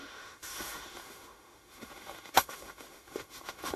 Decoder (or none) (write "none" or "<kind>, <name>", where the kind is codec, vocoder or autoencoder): autoencoder, DAC-VAE